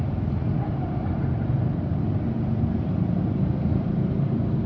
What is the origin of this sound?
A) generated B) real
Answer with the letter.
A